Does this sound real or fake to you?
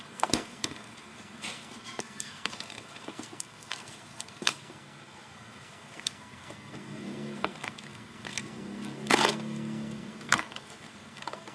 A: fake